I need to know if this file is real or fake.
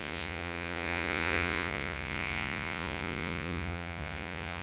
fake